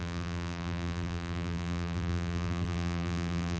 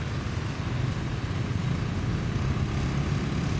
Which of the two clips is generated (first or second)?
first